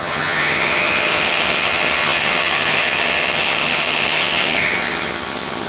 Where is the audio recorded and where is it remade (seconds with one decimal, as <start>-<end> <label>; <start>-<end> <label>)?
0.0-5.7 remade

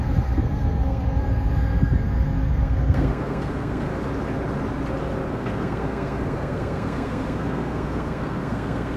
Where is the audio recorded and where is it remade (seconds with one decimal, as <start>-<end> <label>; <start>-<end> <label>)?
0.0-3.9 remade; 3.9-5.3 recorded; 5.3-9.0 remade

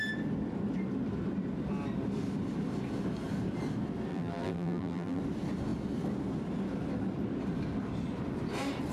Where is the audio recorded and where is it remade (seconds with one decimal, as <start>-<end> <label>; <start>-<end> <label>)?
0.0-4.1 recorded; 4.1-5.2 remade; 5.2-8.9 recorded

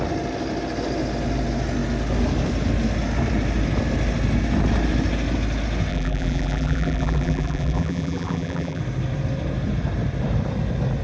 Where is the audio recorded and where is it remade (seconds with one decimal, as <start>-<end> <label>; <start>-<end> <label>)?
0.0-5.9 recorded; 5.9-8.8 remade; 8.8-11.0 recorded

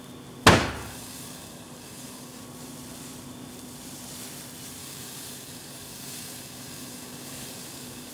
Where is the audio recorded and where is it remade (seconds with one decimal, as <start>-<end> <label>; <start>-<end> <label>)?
0.0-0.8 recorded; 0.8-2.4 remade; 2.4-4.8 recorded; 4.8-8.1 remade